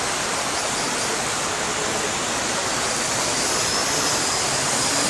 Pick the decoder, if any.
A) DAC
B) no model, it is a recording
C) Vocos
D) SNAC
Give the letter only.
B